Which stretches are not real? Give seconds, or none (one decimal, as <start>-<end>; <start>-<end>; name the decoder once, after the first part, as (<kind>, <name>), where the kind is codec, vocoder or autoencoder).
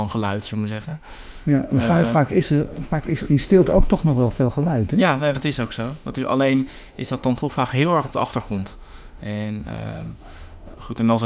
0.0-11.3 (autoencoder, DAC-VAE)